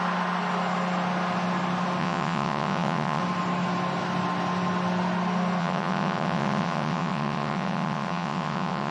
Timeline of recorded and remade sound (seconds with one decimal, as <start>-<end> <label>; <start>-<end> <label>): 0.0-2.0 recorded; 2.0-3.2 remade; 3.2-5.6 recorded; 5.6-8.9 remade